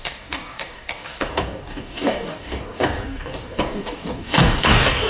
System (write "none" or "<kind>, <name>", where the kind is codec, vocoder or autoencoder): codec, DAC